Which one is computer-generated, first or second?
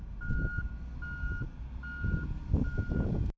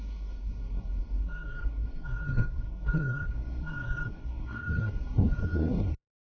second